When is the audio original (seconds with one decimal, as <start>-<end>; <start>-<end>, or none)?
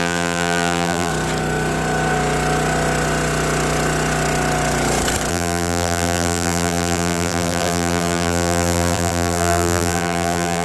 1.1-5.3